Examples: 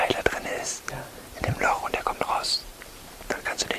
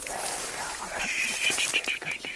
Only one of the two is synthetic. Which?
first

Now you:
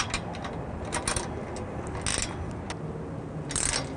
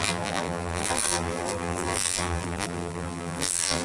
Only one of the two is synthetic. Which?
second